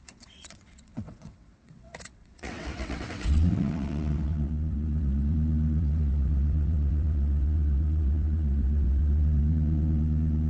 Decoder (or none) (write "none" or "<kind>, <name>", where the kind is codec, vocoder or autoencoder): vocoder, WaveNeXt